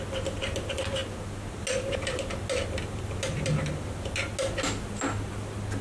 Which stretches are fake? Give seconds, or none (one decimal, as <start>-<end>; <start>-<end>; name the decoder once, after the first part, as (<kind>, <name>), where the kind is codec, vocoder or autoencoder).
none